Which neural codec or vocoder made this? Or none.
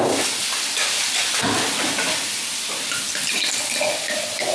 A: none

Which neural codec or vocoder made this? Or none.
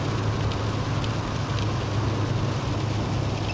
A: none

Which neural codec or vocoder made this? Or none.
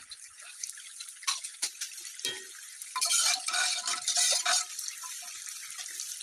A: none